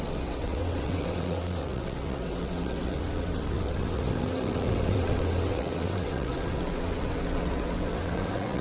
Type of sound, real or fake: fake